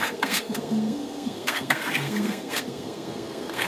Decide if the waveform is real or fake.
fake